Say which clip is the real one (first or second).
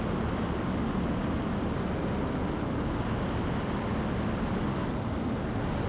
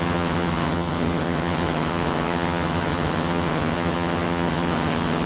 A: first